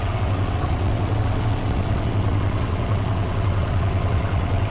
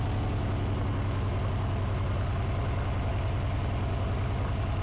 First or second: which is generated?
first